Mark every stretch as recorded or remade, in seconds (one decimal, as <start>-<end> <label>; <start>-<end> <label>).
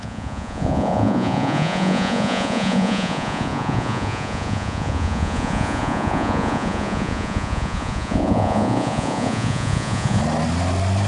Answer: 0.0-10.2 remade; 10.2-11.1 recorded